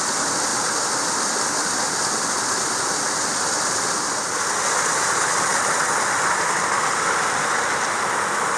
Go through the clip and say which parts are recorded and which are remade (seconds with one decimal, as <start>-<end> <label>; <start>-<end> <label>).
0.0-8.6 recorded